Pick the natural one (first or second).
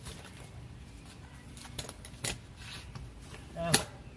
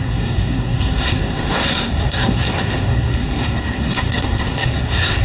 first